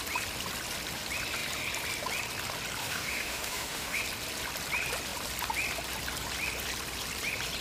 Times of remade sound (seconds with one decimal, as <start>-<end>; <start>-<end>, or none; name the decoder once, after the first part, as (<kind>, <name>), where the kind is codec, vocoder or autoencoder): 2.8-4.0 (autoencoder, DAC-VAE)

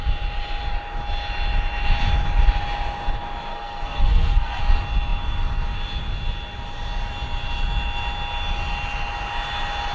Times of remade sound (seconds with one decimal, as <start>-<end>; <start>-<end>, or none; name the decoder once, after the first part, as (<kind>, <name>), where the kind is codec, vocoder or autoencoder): 3.5-4.6 (codec, SNAC)